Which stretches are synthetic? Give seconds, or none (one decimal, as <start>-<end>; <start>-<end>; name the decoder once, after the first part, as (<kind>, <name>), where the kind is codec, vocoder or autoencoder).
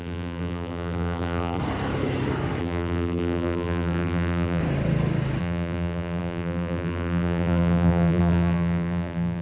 0.0-1.6 (vocoder, BigVGAN v2); 2.6-4.6; 5.4-9.4